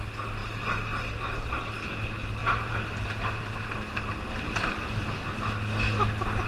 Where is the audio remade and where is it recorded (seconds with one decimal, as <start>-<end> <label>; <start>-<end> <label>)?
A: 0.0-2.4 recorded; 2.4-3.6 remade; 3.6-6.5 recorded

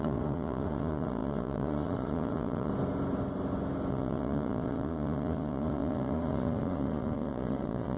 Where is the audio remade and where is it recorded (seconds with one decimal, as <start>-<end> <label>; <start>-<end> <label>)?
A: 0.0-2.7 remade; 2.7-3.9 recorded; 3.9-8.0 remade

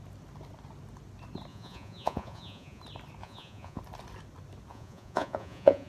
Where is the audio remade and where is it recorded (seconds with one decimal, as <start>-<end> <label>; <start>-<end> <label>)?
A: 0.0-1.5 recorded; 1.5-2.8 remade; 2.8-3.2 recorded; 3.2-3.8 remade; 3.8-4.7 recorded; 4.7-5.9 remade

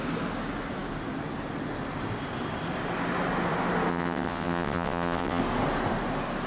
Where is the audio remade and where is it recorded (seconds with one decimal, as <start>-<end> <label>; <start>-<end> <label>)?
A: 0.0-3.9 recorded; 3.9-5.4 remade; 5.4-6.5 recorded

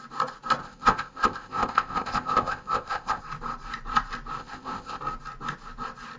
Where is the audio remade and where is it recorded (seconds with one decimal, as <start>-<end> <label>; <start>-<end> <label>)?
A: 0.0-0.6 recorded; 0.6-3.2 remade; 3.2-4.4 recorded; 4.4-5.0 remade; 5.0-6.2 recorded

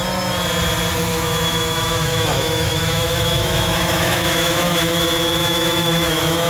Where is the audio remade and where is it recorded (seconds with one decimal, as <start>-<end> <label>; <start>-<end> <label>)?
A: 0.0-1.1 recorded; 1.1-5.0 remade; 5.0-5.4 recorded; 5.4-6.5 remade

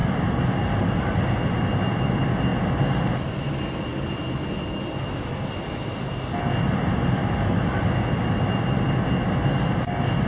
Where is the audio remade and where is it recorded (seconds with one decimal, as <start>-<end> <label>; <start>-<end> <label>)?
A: 0.0-0.6 remade; 0.6-7.2 recorded; 7.2-7.8 remade; 7.8-10.3 recorded